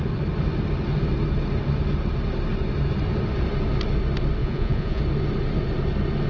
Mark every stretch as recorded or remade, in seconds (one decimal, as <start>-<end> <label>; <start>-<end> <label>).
0.0-4.4 recorded; 4.4-5.0 remade; 5.0-6.3 recorded